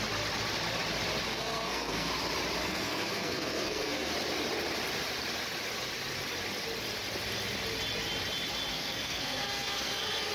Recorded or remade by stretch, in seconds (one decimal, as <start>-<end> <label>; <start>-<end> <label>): 0.0-1.3 recorded; 1.3-2.1 remade; 2.1-2.6 recorded; 2.6-4.1 remade; 4.1-8.7 recorded; 8.7-10.3 remade

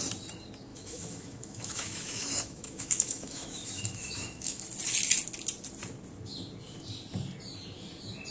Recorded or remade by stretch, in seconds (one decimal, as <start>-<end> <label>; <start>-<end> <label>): 0.0-0.7 recorded; 0.7-4.6 remade; 4.6-8.3 recorded

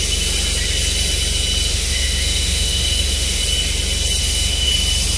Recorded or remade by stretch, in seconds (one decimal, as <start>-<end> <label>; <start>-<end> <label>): 0.0-1.7 recorded; 1.7-3.4 remade; 3.4-4.2 recorded; 4.2-4.7 remade; 4.7-5.2 recorded

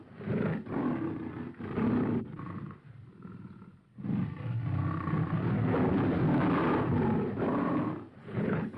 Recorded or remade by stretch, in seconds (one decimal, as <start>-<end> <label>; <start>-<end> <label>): 0.0-8.2 recorded; 8.2-8.8 remade

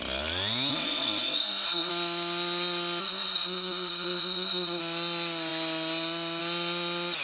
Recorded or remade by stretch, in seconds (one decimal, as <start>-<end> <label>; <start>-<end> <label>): 0.0-0.7 recorded; 0.7-1.9 remade; 1.9-3.0 recorded; 3.0-4.8 remade; 4.8-7.2 recorded

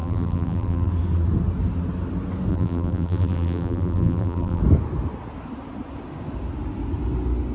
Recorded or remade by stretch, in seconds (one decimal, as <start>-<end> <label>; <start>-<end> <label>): 0.0-0.9 remade; 0.9-2.5 recorded; 2.5-4.6 remade; 4.6-7.5 recorded

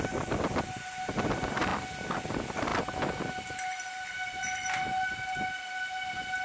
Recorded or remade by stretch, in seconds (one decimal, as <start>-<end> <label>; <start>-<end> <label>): 0.0-6.4 recorded